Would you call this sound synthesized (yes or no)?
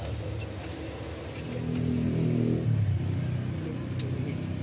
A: no